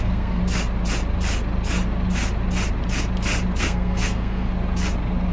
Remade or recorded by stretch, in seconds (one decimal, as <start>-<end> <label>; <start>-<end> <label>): 0.0-0.4 remade; 0.4-3.6 recorded; 3.6-4.5 remade; 4.5-5.3 recorded